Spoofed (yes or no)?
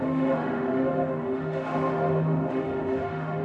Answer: yes